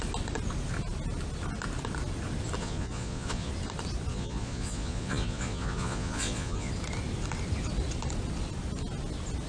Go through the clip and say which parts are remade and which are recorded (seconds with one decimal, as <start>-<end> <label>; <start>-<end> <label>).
0.0-2.6 recorded; 2.6-3.5 remade; 3.5-4.1 recorded; 4.1-6.7 remade; 6.7-9.5 recorded